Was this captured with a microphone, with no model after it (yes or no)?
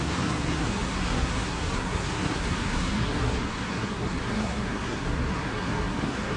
no